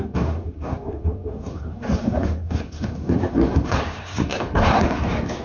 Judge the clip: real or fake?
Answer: fake